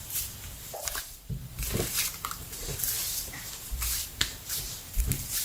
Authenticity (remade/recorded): remade